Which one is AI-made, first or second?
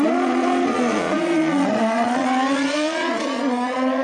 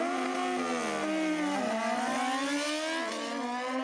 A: first